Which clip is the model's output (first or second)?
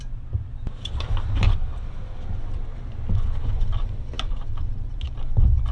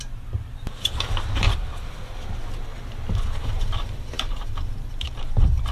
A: second